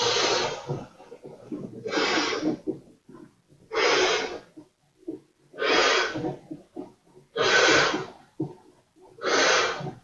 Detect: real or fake real